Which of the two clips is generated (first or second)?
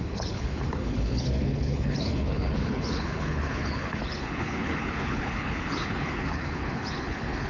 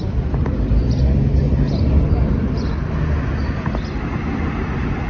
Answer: first